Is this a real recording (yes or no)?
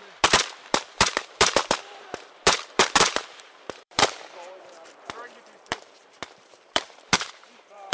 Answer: no